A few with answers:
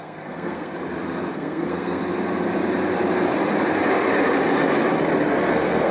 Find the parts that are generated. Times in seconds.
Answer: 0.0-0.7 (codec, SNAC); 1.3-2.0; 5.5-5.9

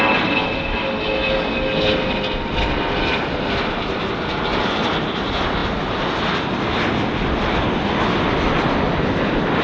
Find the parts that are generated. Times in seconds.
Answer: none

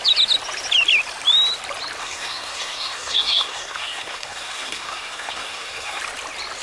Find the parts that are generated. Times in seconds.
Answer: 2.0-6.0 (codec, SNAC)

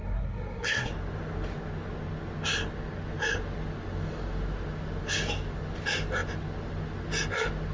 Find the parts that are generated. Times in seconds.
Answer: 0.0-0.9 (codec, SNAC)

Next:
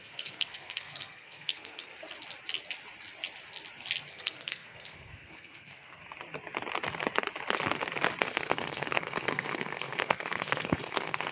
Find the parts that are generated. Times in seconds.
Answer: 0.0-1.9 (codec, SNAC); 4.1-6.0; 8.2-11.3

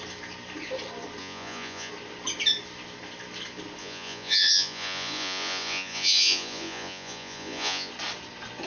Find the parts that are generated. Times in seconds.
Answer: 1.2-1.9 (vocoder, Vocos); 3.8-7.9